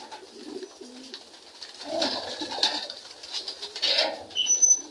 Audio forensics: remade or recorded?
recorded